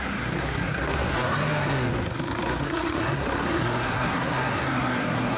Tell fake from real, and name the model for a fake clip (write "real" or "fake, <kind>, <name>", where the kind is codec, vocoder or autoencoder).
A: fake, codec, SNAC